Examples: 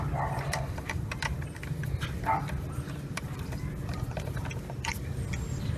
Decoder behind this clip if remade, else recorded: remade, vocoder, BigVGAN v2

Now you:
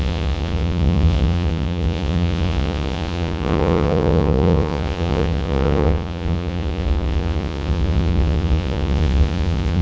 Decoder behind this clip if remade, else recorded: remade, vocoder, Vocos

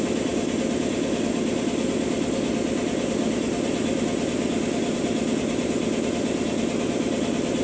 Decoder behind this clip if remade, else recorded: recorded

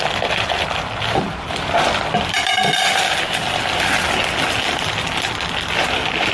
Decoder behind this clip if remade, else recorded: recorded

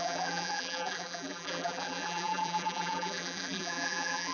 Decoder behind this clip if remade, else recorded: remade, vocoder, BigVGAN v2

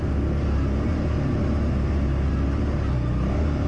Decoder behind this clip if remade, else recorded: recorded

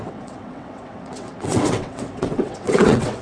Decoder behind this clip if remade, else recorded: remade, vocoder, WaveNeXt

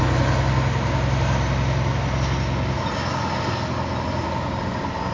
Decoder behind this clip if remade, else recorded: recorded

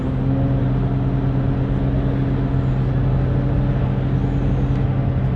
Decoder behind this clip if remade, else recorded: recorded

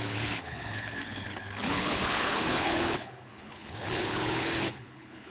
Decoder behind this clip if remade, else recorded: remade, codec, HILCodec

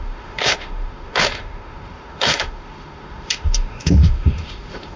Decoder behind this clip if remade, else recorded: remade, autoencoder, DAC-VAE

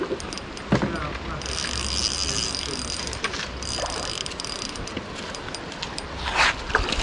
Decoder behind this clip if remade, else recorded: recorded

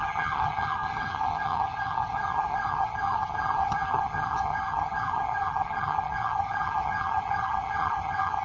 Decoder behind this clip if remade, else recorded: remade, vocoder, HiFi-GAN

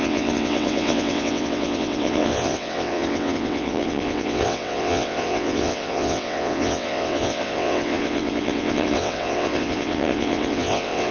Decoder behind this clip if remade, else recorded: remade, vocoder, WaveNeXt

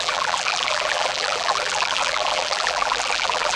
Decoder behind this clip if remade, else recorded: remade, vocoder, BigVGAN v2